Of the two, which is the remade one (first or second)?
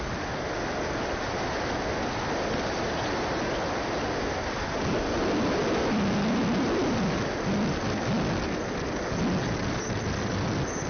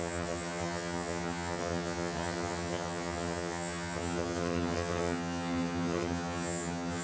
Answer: second